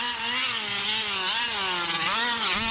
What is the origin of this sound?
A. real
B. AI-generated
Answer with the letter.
A